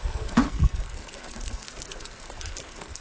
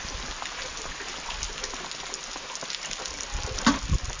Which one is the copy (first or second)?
first